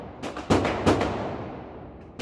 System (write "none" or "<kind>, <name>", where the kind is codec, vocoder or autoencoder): none